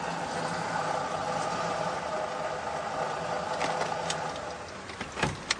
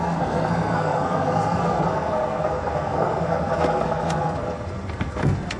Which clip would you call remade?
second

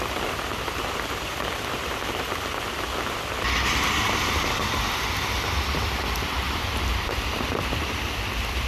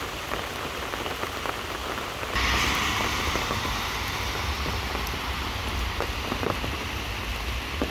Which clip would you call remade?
first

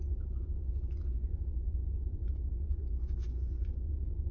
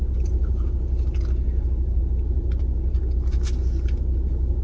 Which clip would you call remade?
first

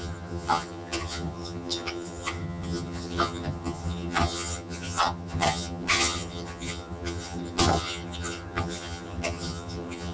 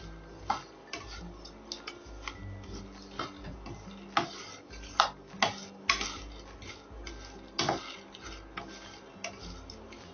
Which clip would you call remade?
first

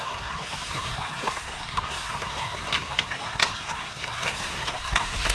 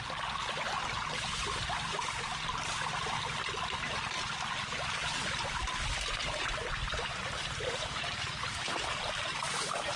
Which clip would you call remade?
first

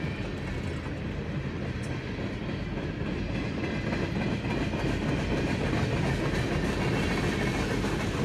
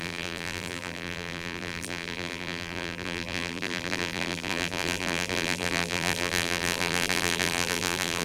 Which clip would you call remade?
second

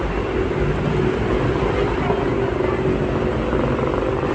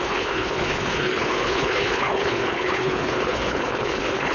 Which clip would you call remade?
second